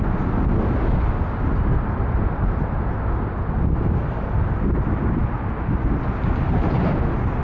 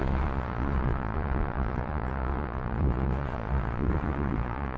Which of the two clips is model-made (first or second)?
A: second